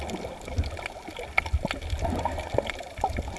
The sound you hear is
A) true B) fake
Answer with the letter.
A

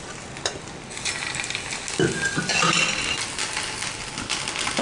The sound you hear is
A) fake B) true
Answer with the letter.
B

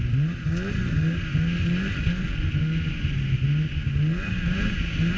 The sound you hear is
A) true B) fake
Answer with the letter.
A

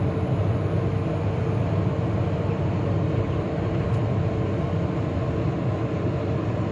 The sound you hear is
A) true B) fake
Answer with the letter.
A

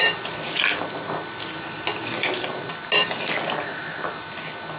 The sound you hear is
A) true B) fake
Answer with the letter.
A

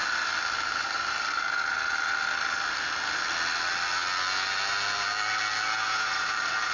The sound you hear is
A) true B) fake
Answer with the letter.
A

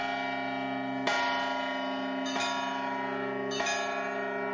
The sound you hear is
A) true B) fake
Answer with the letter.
A